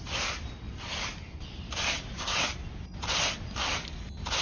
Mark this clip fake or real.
real